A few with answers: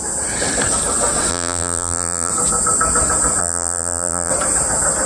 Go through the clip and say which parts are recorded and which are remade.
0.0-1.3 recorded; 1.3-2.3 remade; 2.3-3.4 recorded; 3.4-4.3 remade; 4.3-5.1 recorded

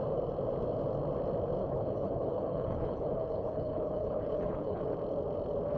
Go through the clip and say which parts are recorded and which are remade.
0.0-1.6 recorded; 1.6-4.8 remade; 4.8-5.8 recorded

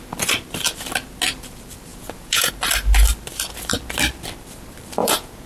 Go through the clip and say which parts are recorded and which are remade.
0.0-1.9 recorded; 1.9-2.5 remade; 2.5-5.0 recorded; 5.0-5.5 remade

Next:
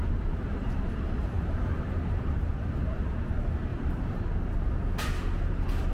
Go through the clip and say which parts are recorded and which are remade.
0.0-3.3 remade; 3.3-3.7 recorded; 3.7-4.2 remade; 4.2-5.9 recorded